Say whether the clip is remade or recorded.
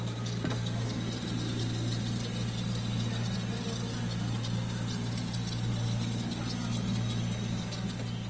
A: recorded